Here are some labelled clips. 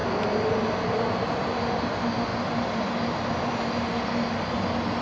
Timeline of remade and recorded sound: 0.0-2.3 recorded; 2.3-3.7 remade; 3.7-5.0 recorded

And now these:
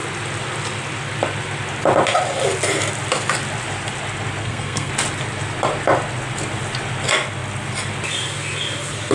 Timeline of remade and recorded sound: 0.0-4.4 recorded; 4.4-4.9 remade; 4.9-9.1 recorded

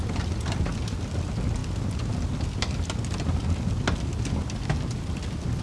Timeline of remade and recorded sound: 0.0-5.6 recorded

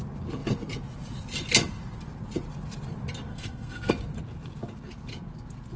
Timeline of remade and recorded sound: 0.0-3.3 recorded; 3.3-3.9 remade; 3.9-5.8 recorded

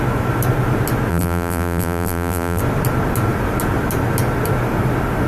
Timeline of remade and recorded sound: 0.0-1.1 recorded; 1.1-2.6 remade; 2.6-5.3 recorded